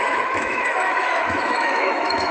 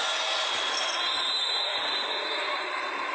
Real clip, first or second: second